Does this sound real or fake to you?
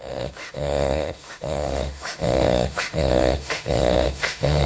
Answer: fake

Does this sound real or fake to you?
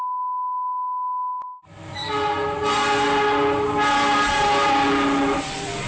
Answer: real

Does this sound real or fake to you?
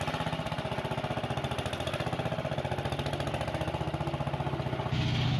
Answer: real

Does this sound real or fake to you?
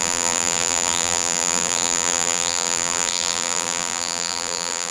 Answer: fake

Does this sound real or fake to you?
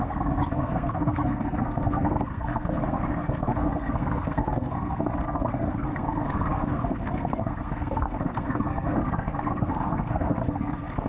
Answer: fake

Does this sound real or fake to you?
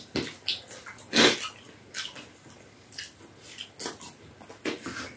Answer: real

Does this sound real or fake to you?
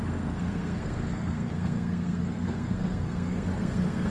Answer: fake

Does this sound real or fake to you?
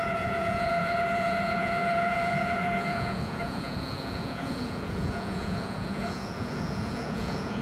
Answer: fake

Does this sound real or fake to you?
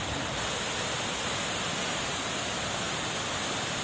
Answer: real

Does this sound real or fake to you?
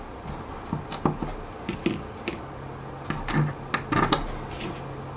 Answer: real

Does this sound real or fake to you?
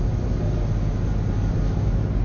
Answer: real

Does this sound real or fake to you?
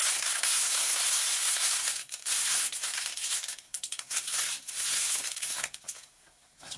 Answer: fake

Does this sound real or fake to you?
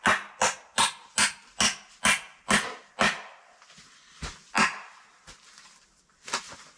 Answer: real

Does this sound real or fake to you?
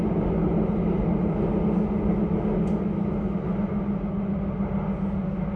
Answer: real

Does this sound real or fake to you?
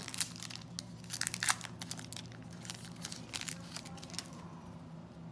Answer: real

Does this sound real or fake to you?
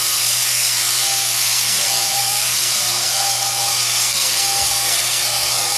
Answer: fake